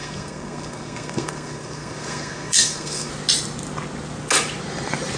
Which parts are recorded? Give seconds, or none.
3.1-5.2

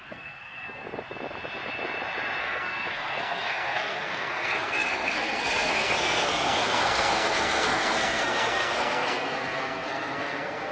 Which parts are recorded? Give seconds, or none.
0.8-2.4

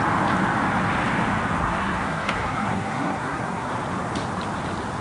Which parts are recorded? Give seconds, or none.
0.0-1.6; 3.7-5.0

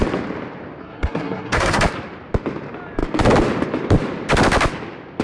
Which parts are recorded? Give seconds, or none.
0.0-0.8; 1.8-5.2

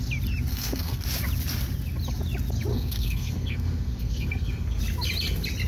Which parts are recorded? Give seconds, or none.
0.0-0.5; 1.0-2.7; 4.8-5.7